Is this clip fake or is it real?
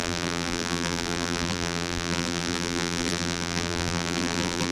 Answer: fake